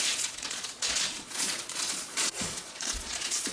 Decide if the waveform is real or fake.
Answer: fake